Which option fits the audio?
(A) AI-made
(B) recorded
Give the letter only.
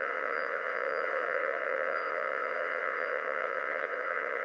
A